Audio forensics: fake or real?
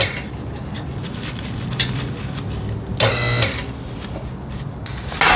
real